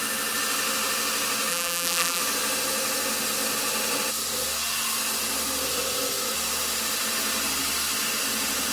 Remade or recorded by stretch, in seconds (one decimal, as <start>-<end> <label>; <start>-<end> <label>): 0.0-1.5 recorded; 1.5-2.2 remade; 2.2-8.7 recorded